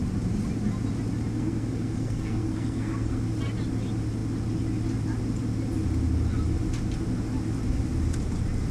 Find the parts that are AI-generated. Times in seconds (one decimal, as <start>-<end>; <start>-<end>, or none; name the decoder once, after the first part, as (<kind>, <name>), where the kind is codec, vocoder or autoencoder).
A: 1.3-3.2 (codec, SNAC)